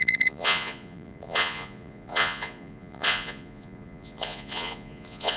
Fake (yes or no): yes